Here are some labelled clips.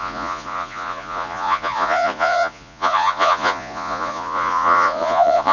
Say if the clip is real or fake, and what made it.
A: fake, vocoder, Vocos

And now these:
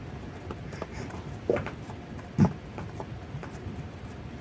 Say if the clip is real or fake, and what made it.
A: real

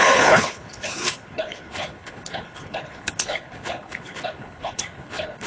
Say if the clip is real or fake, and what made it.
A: fake, codec, HILCodec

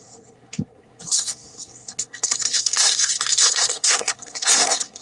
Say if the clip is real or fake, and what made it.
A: fake, codec, SNAC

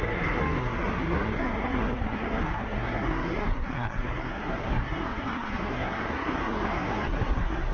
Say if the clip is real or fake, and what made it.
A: fake, codec, SNAC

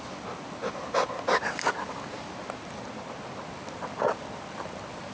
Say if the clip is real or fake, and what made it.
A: real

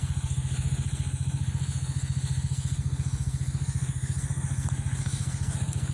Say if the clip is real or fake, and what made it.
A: fake, codec, SNAC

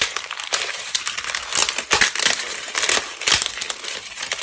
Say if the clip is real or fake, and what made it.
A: real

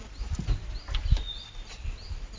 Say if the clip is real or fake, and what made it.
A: real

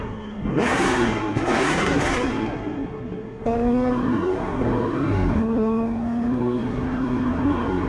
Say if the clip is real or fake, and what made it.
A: fake, codec, SNAC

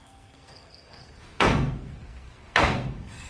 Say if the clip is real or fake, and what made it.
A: fake, codec, SNAC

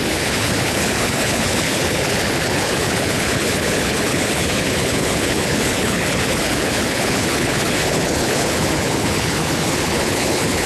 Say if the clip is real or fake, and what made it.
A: fake, codec, HILCodec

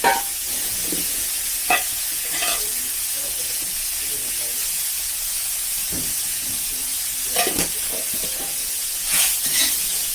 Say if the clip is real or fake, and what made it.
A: fake, vocoder, Vocos